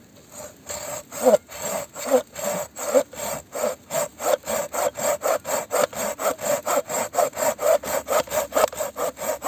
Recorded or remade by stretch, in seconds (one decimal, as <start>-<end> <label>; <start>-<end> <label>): 0.0-9.5 recorded